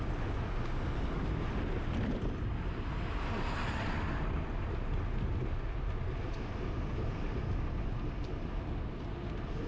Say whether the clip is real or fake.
real